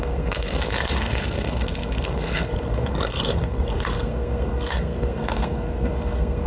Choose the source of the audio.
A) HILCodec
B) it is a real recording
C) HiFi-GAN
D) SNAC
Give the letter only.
D